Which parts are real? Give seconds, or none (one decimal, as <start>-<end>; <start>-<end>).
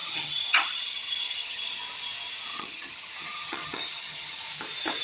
1.8-2.5; 4.4-5.0